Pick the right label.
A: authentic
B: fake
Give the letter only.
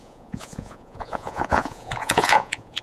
B